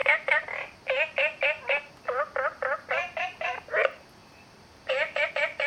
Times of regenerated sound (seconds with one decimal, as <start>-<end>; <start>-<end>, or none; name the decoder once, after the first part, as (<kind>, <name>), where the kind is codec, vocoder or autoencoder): none